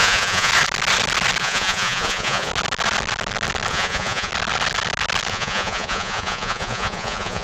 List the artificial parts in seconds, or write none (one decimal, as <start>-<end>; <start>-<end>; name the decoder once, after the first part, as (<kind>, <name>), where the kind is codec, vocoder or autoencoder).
0.0-0.5 (vocoder, Vocos); 1.4-2.5; 3.7-4.3; 5.3-7.4

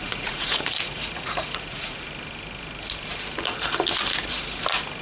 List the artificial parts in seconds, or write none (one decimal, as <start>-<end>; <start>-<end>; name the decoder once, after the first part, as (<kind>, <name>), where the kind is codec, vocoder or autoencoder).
0.0-2.0 (vocoder, Vocos)

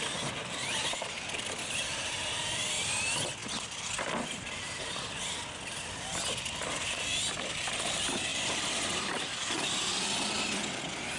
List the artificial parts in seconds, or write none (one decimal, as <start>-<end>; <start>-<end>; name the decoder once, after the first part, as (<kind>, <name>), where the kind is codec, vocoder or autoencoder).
none

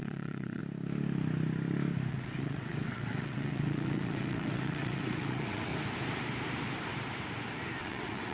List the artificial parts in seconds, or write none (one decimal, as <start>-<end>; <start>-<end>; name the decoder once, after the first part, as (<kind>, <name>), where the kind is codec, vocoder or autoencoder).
0.0-0.6 (vocoder, WaveNeXt); 2.1-5.7; 7.8-8.3

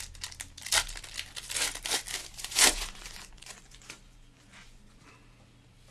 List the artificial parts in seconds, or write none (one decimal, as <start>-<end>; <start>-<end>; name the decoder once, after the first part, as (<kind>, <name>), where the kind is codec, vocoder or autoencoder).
2.2-5.0 (vocoder, Vocos)

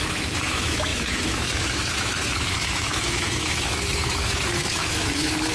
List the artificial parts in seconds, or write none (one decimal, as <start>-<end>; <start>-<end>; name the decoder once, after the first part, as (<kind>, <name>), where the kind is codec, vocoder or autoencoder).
0.0-5.5 (autoencoder, DAC-VAE)

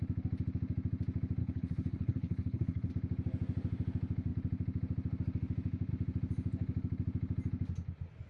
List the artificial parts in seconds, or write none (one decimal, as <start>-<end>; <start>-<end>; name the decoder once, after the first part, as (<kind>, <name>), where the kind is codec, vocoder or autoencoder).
1.4-2.9 (codec, HILCodec)

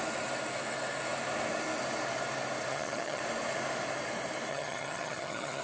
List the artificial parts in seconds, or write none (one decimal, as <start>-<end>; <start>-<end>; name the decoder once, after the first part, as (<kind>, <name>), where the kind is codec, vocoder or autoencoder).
2.7-3.2 (vocoder, HiFi-GAN); 4.5-5.6